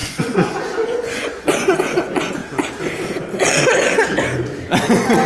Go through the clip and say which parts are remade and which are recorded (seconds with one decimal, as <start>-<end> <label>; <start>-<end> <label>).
0.0-2.4 remade; 2.4-5.3 recorded